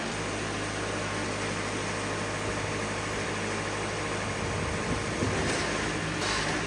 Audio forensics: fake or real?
real